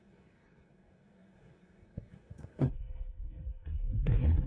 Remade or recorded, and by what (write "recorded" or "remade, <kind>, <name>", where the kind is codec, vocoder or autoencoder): remade, codec, SNAC